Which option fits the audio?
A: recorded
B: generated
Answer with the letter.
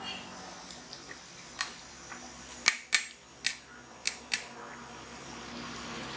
A